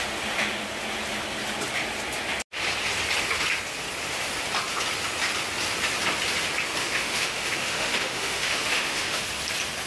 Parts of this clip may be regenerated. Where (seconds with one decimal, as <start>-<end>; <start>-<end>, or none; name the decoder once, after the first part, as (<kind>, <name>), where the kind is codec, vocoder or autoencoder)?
6.8-9.2 (autoencoder, DAC-VAE)